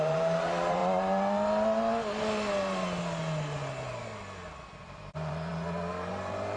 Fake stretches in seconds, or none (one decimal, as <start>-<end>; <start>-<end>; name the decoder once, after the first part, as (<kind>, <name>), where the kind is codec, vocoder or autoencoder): 0.0-0.8 (vocoder, BigVGAN v2); 4.8-6.6